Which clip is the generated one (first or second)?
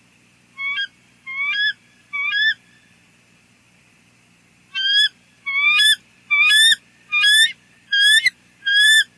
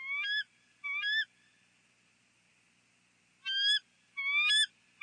first